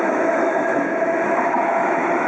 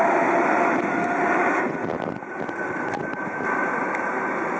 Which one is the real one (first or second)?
second